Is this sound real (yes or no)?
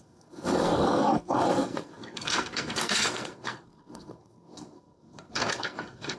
no